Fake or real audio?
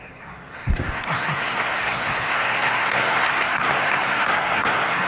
fake